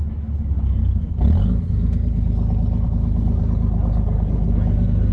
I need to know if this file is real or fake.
real